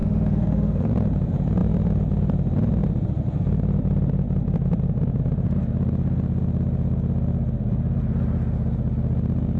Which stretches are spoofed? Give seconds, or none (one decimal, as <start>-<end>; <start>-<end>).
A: 0.0-0.9